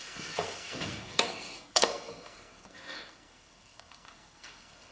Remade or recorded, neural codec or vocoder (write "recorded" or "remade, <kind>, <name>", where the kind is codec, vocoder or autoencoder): remade, codec, SNAC